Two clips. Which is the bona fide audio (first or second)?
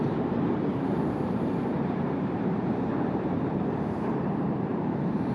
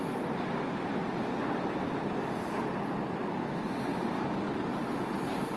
second